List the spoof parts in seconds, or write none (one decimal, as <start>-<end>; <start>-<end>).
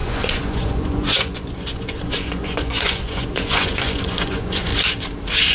0.0-4.7